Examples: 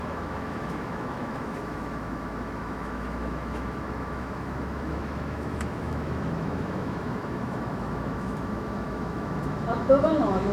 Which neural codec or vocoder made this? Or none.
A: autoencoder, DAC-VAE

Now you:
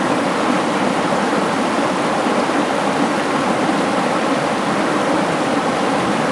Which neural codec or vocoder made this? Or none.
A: vocoder, BigVGAN v2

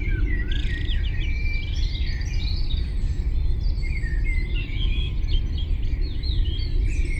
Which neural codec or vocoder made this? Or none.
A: vocoder, BigVGAN v2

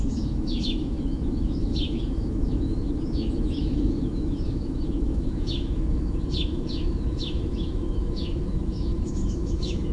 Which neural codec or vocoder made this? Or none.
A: autoencoder, DAC-VAE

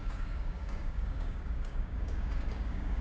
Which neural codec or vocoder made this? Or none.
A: codec, DAC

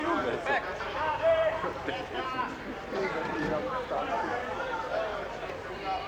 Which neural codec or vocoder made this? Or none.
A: vocoder, BigVGAN v2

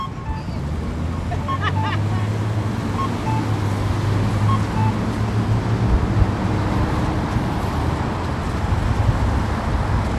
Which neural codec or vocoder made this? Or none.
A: none